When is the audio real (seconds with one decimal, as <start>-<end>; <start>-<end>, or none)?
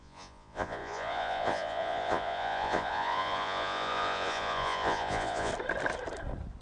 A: 5.5-6.6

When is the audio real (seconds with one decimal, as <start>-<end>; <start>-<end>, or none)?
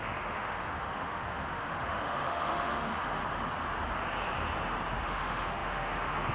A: 3.2-5.0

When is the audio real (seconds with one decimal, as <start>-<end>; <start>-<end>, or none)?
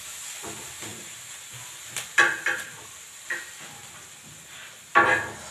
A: 0.0-0.9; 3.4-5.5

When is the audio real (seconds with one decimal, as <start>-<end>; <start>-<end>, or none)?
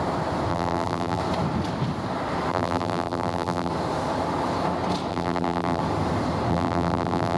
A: 0.0-0.5; 1.2-2.5; 3.7-5.1; 5.8-6.5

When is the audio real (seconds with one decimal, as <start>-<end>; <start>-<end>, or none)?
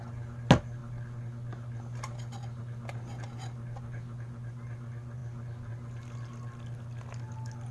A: 0.0-7.7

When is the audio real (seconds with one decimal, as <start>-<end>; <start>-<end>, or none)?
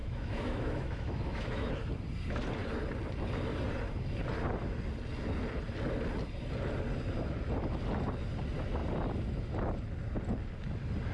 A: 1.7-11.1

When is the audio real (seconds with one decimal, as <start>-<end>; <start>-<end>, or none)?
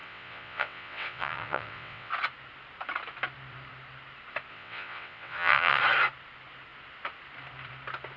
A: 2.1-4.5; 5.8-8.2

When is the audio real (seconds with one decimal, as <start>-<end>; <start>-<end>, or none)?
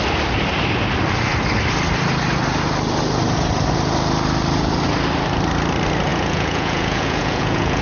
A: 0.0-6.1